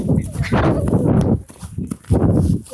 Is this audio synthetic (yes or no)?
no